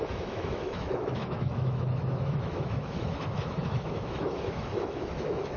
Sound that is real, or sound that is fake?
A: fake